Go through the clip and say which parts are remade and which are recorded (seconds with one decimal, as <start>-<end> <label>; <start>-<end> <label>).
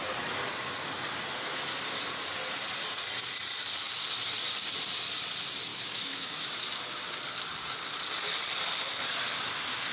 0.0-5.7 recorded; 5.7-6.5 remade; 6.5-9.9 recorded